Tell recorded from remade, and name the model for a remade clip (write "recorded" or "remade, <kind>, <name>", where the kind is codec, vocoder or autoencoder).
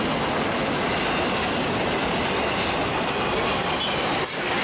recorded